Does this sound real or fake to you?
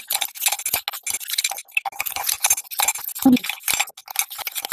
real